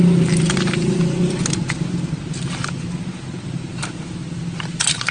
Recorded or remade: recorded